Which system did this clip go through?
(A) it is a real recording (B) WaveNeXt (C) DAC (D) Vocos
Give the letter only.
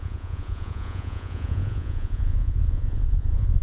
D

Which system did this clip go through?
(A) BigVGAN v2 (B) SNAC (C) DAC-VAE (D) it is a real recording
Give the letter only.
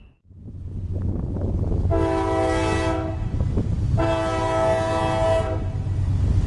D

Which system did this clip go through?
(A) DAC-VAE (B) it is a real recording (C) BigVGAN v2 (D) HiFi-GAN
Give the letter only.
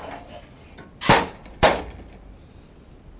B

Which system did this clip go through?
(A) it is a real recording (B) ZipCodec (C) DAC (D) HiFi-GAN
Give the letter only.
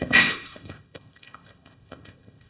B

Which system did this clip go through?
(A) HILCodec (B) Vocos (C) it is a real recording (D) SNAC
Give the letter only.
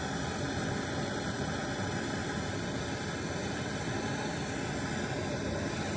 C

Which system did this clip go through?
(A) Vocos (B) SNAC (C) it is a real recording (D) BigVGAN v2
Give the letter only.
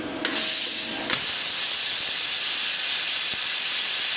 C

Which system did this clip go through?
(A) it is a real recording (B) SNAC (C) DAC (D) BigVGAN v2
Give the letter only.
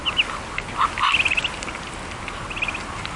A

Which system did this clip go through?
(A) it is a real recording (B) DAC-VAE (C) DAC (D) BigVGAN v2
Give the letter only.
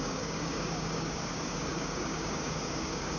C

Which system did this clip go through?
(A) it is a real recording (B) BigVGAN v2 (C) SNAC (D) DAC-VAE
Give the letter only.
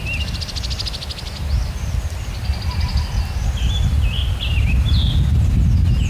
A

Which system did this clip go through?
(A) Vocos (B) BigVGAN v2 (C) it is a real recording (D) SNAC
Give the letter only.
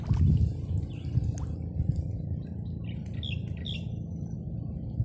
C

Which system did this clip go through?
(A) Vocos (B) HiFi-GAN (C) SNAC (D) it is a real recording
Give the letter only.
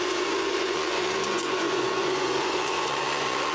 A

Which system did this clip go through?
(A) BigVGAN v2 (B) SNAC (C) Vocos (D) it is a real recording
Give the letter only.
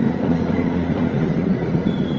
C